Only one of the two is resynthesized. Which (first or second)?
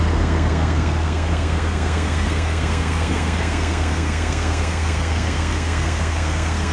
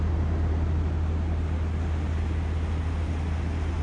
first